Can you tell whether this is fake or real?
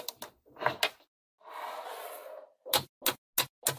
real